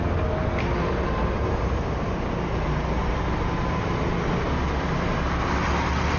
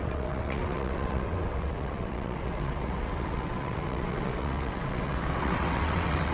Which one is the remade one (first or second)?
second